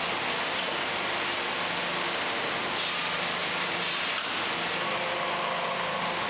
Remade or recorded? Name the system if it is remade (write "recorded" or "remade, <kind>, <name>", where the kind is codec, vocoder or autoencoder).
recorded